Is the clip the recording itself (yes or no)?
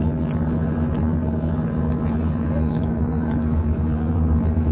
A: no